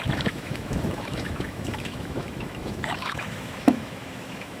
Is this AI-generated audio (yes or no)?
yes